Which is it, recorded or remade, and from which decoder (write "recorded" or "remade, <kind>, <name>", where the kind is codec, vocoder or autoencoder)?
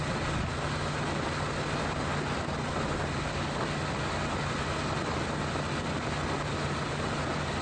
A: recorded